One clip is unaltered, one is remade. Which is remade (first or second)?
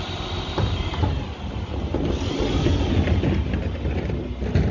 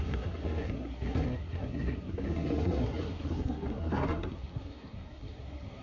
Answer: second